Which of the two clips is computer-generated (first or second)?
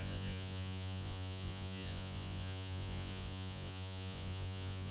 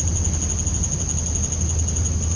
first